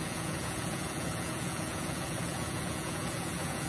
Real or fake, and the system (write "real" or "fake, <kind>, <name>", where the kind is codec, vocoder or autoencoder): fake, vocoder, Vocos